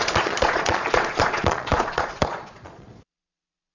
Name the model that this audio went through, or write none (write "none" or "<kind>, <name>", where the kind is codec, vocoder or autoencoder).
vocoder, Vocos